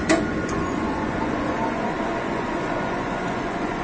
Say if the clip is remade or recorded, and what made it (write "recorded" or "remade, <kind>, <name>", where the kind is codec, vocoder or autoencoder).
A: remade, vocoder, Vocos